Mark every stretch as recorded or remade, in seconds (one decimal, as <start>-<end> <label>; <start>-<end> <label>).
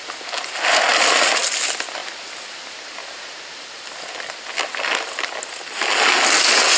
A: 0.0-0.9 recorded; 0.9-1.4 remade; 1.4-6.8 recorded